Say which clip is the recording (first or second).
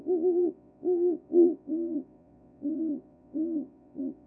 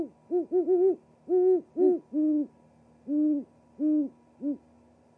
second